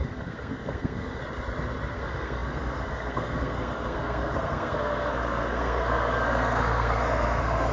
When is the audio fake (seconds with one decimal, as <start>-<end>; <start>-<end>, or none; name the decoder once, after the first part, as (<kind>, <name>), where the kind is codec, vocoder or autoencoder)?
0.0-1.2 (codec, SNAC); 1.9-7.7